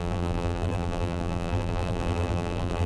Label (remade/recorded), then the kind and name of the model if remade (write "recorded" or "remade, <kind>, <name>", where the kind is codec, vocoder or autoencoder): remade, vocoder, BigVGAN v2